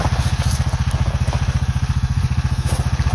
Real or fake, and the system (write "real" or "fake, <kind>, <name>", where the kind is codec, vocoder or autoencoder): real